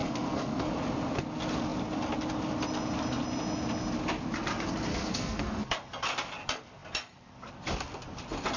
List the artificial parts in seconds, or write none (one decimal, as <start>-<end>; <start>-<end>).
0.0-0.7; 4.9-5.7